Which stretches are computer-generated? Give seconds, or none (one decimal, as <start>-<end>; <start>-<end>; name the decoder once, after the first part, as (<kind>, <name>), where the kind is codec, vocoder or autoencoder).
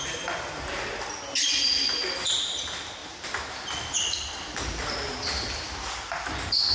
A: none